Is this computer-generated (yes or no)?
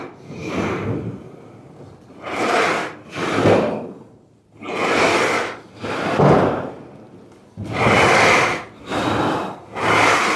no